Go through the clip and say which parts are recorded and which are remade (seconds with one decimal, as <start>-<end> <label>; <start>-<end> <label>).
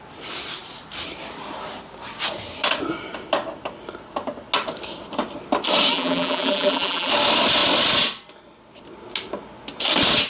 0.0-5.9 recorded; 5.9-7.1 remade; 7.1-10.3 recorded